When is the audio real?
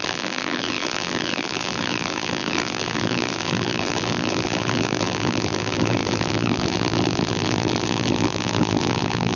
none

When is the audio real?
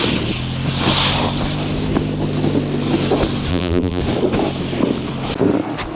0.0-3.5; 4.0-6.0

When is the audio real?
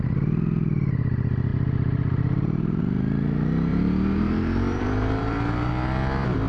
0.0-1.5; 2.8-3.7; 5.7-6.5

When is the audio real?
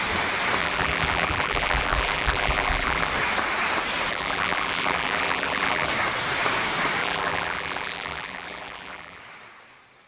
0.0-0.6; 3.1-4.1; 5.9-7.0; 9.2-10.1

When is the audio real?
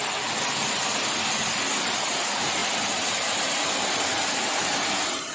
0.0-2.1; 2.6-3.4